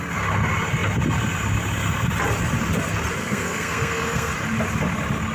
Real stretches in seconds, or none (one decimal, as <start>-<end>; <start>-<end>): 0.0-3.2; 4.3-5.3